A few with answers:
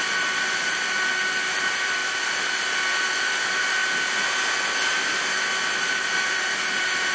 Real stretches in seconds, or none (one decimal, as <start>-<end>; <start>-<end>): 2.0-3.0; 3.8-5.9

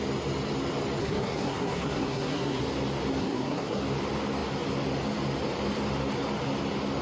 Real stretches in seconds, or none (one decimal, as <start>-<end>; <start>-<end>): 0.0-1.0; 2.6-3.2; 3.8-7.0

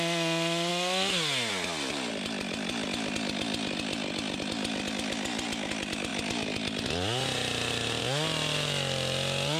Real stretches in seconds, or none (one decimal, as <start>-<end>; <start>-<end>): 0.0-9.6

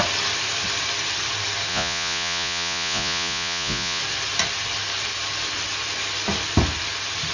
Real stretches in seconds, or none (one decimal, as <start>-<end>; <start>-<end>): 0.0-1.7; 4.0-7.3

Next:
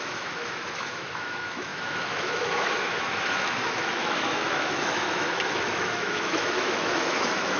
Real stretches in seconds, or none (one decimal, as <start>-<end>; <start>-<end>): none